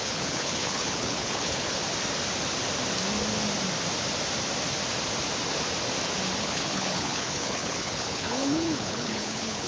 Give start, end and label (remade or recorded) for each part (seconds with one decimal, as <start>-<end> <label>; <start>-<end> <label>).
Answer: 0.0-1.8 remade; 1.8-6.4 recorded; 6.4-9.7 remade